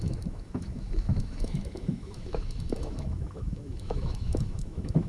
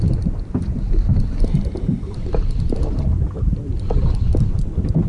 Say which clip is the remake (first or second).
first